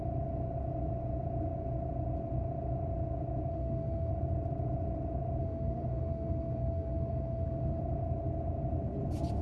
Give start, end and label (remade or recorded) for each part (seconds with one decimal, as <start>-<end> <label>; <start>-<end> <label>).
0.0-3.5 recorded; 3.5-4.1 remade; 4.1-5.4 recorded; 5.4-7.8 remade; 7.8-9.4 recorded